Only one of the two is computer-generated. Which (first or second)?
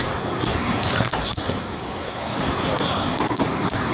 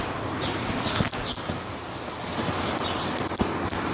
first